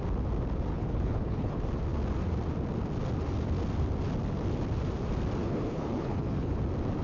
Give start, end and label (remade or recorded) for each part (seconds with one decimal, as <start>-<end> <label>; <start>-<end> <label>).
0.0-0.7 recorded; 0.7-1.6 remade; 1.6-5.4 recorded; 5.4-6.6 remade; 6.6-7.0 recorded